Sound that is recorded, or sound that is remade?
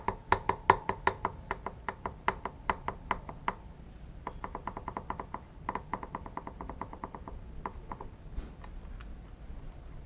recorded